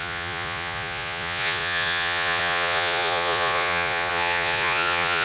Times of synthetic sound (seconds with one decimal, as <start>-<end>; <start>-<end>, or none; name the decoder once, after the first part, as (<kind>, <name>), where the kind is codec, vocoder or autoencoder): 0.0-5.2 (vocoder, Vocos)